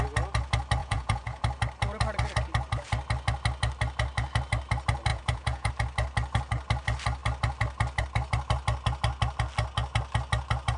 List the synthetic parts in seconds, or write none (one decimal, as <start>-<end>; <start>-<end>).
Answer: 0.8-1.4; 5.1-5.7